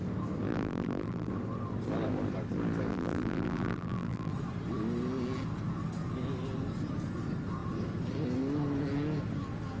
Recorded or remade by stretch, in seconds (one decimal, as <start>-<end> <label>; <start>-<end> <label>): 0.0-0.5 recorded; 0.5-1.3 remade; 1.3-2.9 recorded; 2.9-4.3 remade; 4.3-9.8 recorded